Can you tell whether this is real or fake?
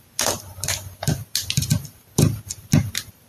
real